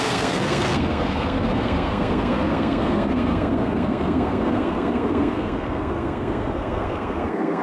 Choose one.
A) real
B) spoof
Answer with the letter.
B